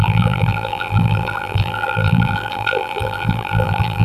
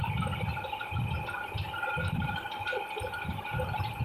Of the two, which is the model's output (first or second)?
first